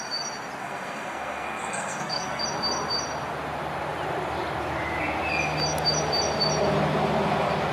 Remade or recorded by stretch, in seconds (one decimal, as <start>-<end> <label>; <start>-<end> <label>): 0.0-0.6 recorded; 0.6-2.4 remade; 2.4-7.7 recorded